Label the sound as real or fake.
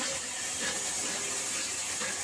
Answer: real